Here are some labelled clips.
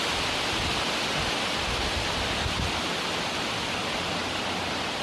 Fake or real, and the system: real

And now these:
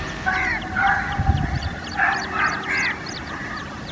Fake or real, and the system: real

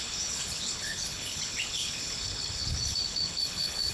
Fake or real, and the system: fake, codec, HILCodec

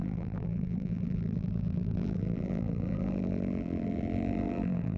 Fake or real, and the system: fake, vocoder, BigVGAN v2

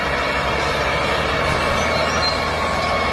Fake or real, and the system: real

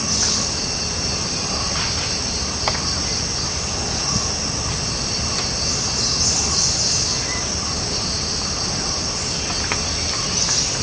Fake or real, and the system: real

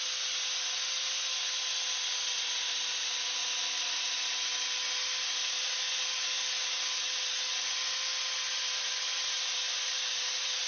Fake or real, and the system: real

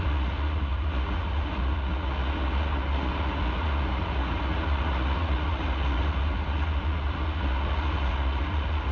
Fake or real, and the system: fake, vocoder, Vocos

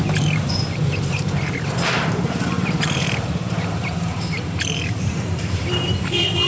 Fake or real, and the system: fake, vocoder, BigVGAN v2